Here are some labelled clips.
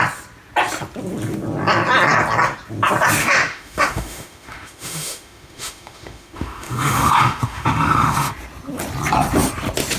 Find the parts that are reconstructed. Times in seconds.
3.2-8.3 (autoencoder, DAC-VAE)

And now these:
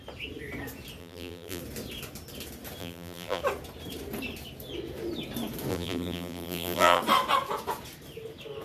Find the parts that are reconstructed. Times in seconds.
1.0-1.6 (vocoder, BigVGAN v2); 2.8-3.4; 5.7-7.0

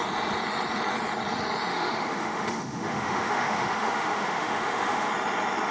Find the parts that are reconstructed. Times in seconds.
1.7-5.1 (autoencoder, DAC-VAE)

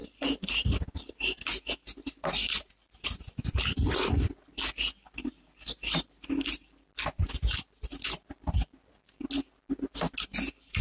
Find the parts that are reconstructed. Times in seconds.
0.0-2.8 (vocoder, BigVGAN v2)

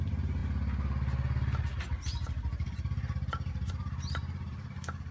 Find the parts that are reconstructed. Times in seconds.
0.0-0.4 (vocoder, BigVGAN v2); 3.5-5.1

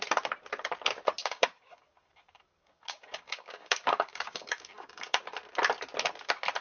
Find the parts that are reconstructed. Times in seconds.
1.2-5.2 (codec, DAC)